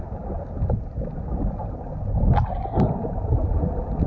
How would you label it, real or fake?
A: real